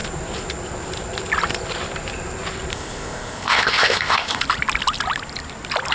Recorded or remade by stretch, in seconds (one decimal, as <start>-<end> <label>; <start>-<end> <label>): 0.0-2.7 recorded; 2.7-4.4 remade; 4.4-5.9 recorded